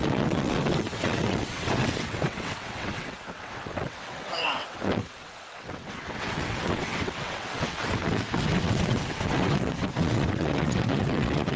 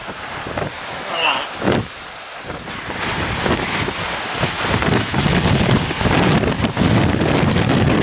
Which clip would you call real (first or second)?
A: second